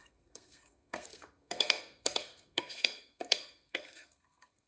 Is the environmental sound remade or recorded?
remade